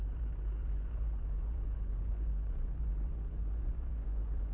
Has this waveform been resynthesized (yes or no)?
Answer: yes